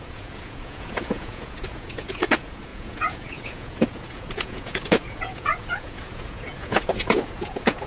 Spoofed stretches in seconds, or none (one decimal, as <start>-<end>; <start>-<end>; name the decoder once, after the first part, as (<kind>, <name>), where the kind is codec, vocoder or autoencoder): 0.0-7.9 (vocoder, Vocos)